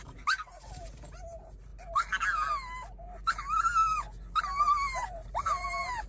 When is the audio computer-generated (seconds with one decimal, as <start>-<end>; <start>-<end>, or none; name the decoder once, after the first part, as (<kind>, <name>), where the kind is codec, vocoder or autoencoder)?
0.0-1.7 (vocoder, BigVGAN v2); 4.4-6.1